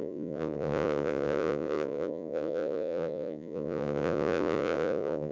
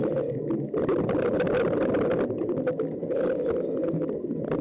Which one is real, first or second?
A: second